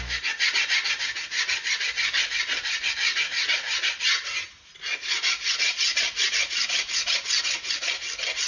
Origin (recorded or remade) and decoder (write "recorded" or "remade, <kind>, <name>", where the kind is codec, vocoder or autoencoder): recorded